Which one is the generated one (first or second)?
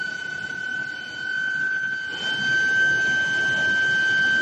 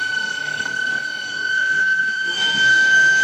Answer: second